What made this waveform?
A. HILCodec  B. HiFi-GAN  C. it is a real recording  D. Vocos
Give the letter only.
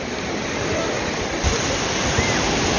C